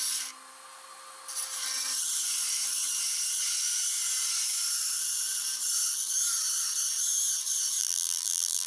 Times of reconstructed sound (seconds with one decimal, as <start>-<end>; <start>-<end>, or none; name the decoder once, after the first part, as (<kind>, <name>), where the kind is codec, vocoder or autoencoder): 7.8-8.7 (vocoder, BigVGAN v2)

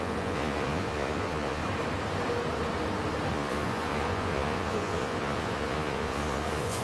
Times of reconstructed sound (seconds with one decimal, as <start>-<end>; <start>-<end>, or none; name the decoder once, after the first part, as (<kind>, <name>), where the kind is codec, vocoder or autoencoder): 0.0-1.6 (vocoder, Vocos); 3.3-6.8

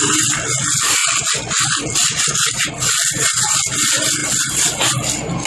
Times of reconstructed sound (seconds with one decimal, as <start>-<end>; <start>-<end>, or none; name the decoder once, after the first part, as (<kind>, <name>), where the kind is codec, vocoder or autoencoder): 1.0-2.7 (vocoder, BigVGAN v2)

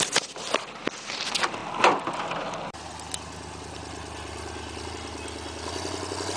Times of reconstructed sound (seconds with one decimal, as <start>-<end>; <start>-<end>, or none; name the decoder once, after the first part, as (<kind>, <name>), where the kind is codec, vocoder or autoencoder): none

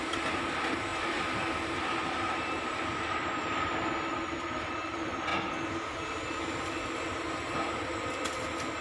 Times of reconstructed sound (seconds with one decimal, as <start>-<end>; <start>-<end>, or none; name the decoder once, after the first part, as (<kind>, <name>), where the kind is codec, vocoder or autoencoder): none

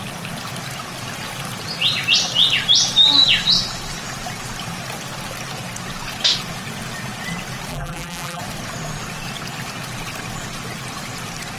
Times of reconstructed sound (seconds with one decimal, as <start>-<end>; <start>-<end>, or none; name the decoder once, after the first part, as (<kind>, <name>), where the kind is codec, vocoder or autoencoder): 7.7-8.4 (vocoder, BigVGAN v2)

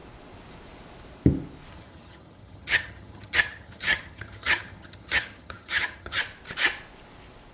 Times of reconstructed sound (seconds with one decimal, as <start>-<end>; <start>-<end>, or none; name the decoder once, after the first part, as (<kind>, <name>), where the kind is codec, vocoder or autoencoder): 1.7-6.2 (vocoder, HiFi-GAN)

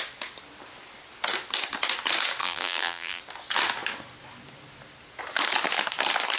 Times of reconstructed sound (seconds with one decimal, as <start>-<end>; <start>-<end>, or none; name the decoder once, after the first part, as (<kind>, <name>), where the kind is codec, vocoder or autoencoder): 2.4-3.2 (vocoder, BigVGAN v2)